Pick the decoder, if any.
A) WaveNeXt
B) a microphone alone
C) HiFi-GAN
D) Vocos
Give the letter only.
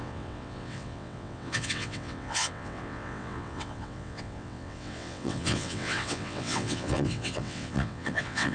A